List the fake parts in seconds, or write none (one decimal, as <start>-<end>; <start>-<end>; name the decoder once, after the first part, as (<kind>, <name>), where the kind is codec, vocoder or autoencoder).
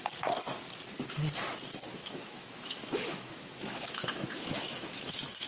2.0-5.5 (autoencoder, DAC-VAE)